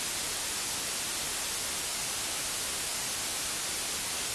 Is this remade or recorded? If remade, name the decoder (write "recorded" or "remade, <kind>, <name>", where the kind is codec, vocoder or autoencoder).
recorded